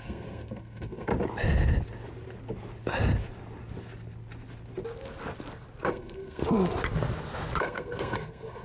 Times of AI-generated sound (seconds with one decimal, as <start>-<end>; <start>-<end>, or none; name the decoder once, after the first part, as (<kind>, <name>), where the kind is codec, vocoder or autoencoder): 0.0-1.1 (codec, SNAC); 5.9-6.4; 7.6-8.6